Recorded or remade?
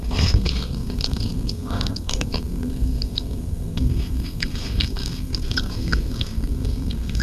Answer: remade